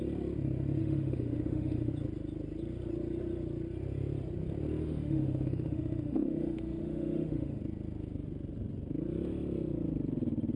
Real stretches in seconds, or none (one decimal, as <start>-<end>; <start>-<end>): 0.0-0.8; 1.9-4.8; 7.6-10.6